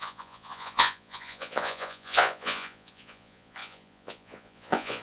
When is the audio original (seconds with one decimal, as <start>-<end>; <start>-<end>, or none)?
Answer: none